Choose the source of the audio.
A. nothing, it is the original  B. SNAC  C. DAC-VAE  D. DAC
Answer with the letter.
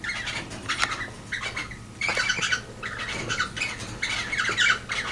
A